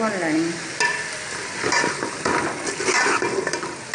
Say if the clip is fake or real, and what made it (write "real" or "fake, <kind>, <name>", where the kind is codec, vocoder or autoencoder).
real